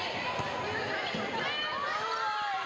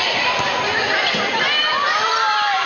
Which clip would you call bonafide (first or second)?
first